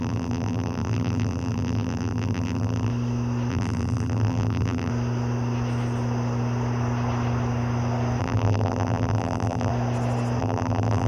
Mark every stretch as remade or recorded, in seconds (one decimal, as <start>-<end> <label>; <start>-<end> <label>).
0.0-2.9 remade; 2.9-3.5 recorded; 3.5-4.9 remade; 4.9-8.2 recorded; 8.2-9.7 remade; 9.7-10.4 recorded; 10.4-11.1 remade